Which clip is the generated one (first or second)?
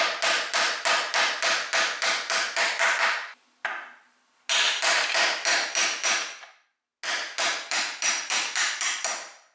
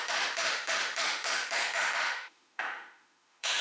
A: second